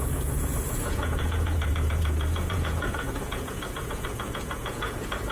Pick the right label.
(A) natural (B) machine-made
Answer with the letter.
B